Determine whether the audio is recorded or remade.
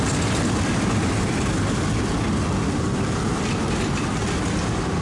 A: recorded